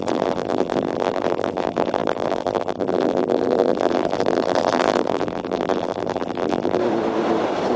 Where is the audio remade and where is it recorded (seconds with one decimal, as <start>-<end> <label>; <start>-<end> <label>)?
0.0-6.8 remade; 6.8-7.8 recorded